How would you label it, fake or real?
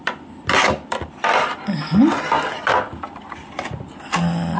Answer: real